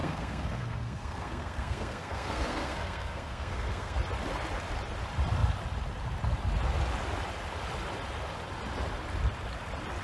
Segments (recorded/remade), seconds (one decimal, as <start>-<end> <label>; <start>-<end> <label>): 0.0-4.0 remade; 4.0-10.0 recorded

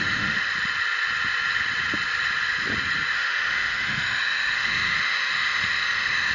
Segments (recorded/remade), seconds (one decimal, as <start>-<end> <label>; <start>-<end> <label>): 0.0-0.5 remade; 0.5-3.1 recorded; 3.1-6.3 remade

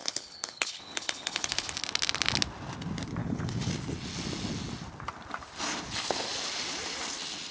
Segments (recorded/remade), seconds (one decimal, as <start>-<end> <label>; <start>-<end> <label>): 0.0-1.5 remade; 1.5-3.2 recorded; 3.2-3.7 remade; 3.7-7.5 recorded

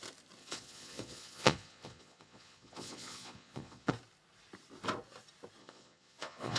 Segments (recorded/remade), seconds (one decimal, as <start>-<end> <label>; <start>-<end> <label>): 0.0-0.4 recorded; 0.4-3.9 remade; 3.9-5.6 recorded; 5.6-6.6 remade

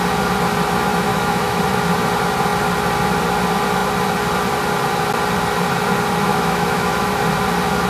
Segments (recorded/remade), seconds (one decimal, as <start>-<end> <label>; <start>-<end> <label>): 0.0-1.1 recorded; 1.1-1.6 remade; 1.6-6.3 recorded; 6.3-7.2 remade; 7.2-7.9 recorded